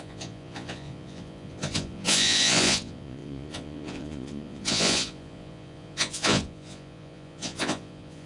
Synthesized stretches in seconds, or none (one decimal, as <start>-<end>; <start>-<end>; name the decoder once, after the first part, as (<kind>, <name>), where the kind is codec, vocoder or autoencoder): 0.0-8.3 (vocoder, Vocos)